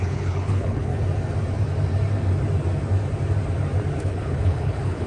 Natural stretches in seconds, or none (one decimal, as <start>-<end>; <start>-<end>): 0.9-4.0